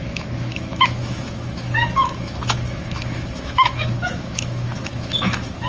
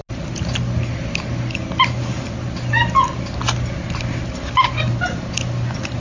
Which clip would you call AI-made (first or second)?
first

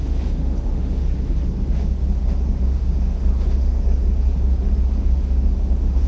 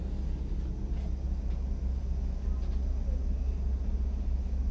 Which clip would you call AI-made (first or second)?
first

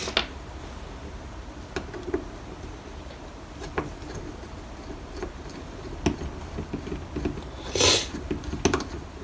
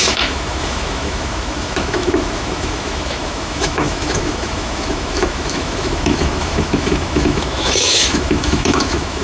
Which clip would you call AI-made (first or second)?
second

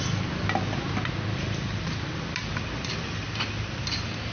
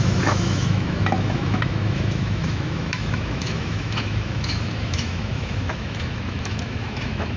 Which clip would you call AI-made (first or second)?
second